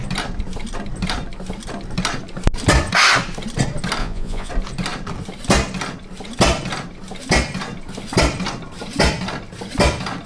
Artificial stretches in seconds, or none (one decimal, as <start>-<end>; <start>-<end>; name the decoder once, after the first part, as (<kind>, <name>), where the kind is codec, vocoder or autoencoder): 4.0-4.5 (vocoder, Vocos)